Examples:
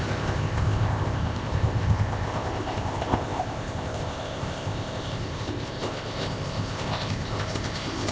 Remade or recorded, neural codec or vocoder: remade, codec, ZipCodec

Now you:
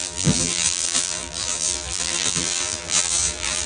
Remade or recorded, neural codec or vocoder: remade, vocoder, BigVGAN v2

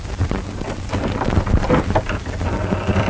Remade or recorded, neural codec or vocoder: recorded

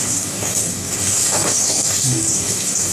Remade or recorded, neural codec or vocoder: remade, codec, DAC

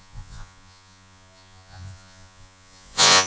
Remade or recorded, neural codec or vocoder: remade, vocoder, Vocos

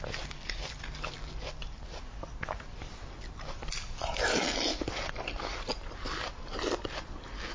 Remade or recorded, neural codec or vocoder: recorded